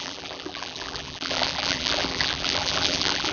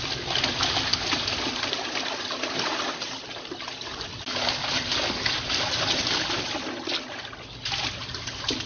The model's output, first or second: first